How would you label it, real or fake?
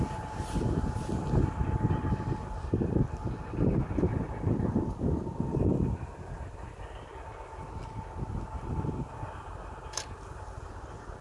real